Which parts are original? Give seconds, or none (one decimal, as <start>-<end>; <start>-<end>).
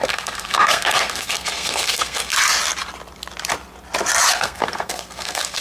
2.3-4.3